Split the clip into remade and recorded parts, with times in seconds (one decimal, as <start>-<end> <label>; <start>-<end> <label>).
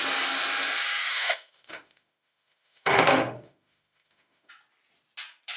0.0-1.1 recorded; 1.1-4.5 remade; 4.5-5.6 recorded